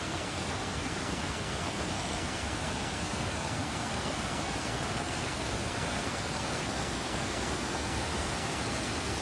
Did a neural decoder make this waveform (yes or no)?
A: yes